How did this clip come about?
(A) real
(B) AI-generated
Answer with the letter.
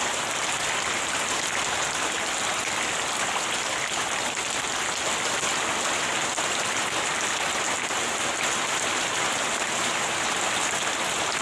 A